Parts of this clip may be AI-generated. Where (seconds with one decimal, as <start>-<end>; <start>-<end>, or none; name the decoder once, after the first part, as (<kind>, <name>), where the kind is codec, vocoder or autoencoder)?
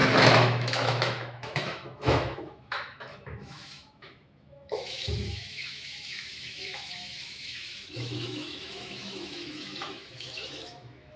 0.0-11.2 (autoencoder, DAC-VAE)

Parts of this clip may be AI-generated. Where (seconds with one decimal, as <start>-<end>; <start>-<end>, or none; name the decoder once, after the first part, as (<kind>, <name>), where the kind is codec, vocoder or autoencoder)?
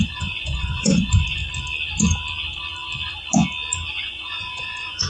0.0-1.4 (vocoder, Vocos); 3.9-5.1